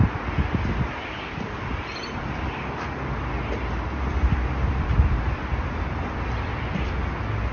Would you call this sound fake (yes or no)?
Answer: no